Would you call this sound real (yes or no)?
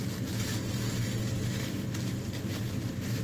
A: yes